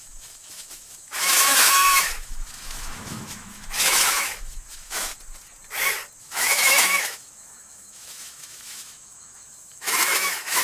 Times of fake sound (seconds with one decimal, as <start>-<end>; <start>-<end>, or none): 0.0-5.1; 6.2-10.6